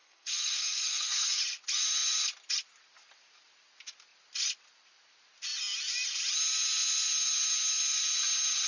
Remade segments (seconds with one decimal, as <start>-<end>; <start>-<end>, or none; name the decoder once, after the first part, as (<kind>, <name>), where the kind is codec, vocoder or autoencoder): 0.0-1.4 (codec, SNAC)